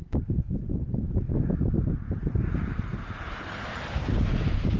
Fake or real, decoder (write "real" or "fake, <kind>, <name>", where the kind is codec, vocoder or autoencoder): fake, vocoder, BigVGAN v2